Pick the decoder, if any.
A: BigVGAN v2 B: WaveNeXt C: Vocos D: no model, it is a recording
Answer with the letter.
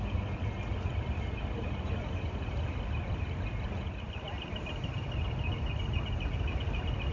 D